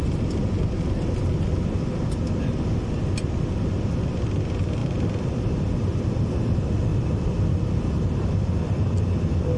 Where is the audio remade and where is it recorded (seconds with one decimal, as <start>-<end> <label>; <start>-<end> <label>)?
0.0-4.8 recorded; 4.8-5.6 remade; 5.6-6.9 recorded; 6.9-8.5 remade; 8.5-9.6 recorded